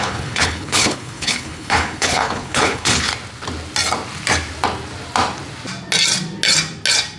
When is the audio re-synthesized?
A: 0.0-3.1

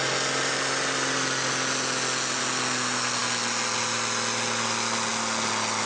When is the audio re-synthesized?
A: none

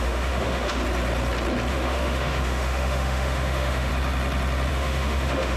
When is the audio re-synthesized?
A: 0.0-0.8; 1.7-3.9; 4.7-5.6

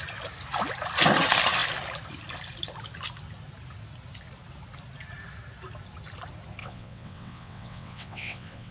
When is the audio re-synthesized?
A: 6.6-8.7

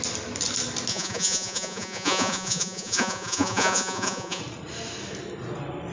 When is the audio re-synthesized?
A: 0.9-4.4

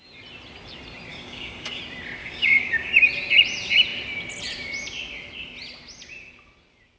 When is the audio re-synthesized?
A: 1.1-1.8; 2.2-2.9

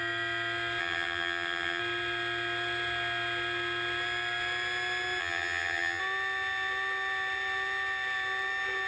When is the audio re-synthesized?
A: 0.8-1.8; 5.2-6.0

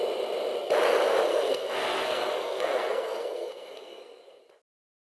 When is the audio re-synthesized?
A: 1.3-4.4